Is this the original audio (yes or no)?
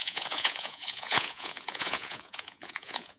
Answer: no